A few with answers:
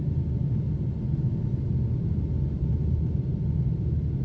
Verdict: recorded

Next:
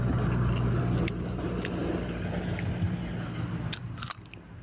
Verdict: recorded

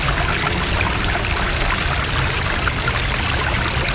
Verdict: recorded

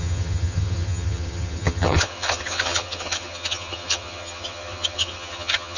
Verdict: remade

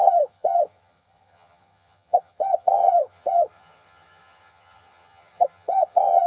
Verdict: remade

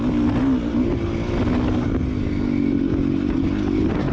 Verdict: recorded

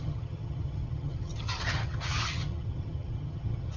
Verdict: remade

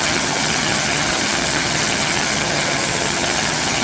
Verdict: remade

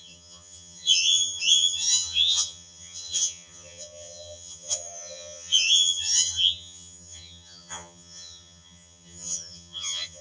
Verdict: remade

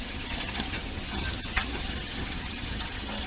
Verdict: remade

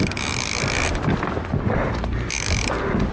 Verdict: recorded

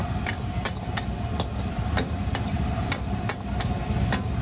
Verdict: recorded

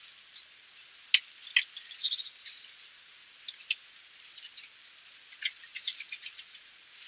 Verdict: recorded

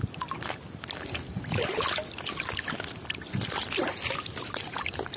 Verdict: recorded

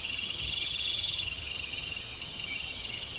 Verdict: remade